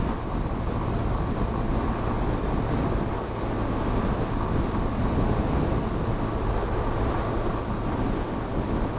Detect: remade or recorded recorded